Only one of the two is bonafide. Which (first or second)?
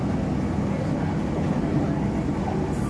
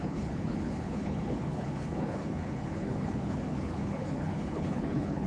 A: first